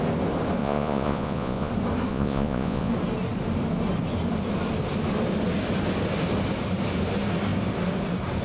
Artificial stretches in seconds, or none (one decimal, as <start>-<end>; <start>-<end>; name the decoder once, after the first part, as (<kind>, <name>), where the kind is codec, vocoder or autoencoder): 0.6-1.7 (vocoder, Vocos); 2.1-2.9